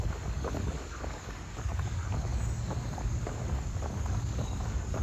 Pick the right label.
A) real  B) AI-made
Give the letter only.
B